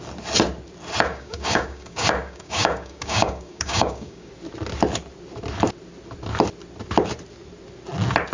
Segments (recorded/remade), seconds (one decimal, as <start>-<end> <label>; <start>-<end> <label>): 0.0-1.1 recorded; 1.1-4.3 remade; 4.3-8.3 recorded